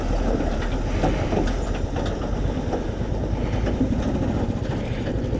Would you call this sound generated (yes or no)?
no